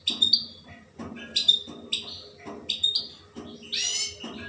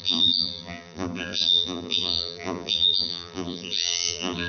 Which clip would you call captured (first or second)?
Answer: first